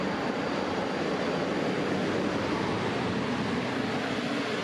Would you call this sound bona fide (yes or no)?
yes